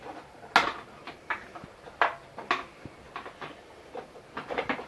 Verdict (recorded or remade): recorded